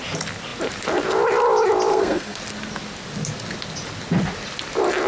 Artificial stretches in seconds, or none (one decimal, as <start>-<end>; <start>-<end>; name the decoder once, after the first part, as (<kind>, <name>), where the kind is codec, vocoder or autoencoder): 1.9-2.4 (codec, SNAC)